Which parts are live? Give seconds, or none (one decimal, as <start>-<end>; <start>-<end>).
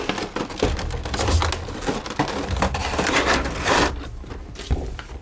1.4-2.0